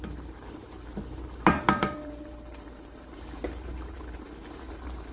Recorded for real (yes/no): no